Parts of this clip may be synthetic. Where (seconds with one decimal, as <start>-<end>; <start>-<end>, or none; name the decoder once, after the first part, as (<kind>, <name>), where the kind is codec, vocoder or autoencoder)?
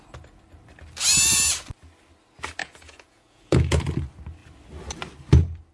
2.6-3.8 (vocoder, Vocos)